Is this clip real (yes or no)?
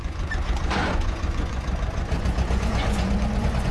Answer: no